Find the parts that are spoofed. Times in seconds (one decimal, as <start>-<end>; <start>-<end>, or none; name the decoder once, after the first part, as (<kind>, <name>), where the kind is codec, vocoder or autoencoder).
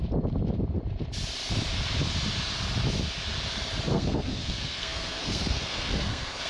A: 3.9-6.5 (codec, SNAC)